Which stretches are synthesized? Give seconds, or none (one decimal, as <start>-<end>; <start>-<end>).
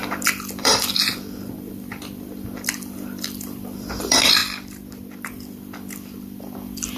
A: 0.0-4.4; 5.3-7.0